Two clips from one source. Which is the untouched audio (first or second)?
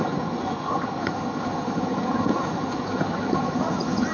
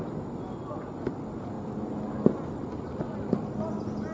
second